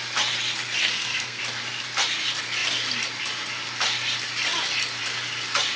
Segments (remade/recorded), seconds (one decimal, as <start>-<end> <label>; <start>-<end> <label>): 0.0-0.8 recorded; 0.8-1.4 remade; 1.4-5.8 recorded